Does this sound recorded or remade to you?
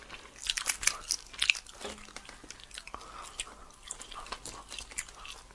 recorded